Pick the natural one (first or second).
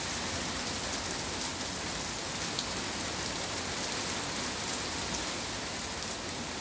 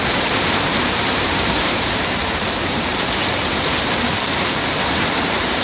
first